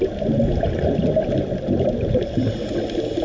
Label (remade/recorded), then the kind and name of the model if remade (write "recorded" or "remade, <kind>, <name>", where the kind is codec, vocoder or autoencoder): recorded